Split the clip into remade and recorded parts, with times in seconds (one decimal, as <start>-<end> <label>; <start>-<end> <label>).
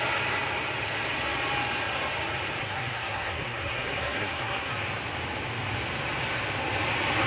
0.0-2.6 recorded; 2.6-4.7 remade; 4.7-7.3 recorded